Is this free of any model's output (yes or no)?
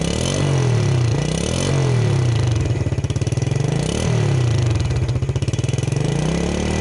yes